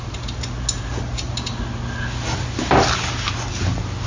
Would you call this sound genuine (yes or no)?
yes